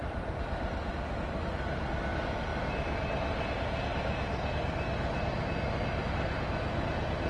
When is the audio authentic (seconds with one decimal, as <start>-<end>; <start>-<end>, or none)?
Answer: 0.9-7.3